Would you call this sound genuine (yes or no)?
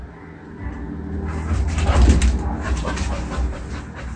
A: yes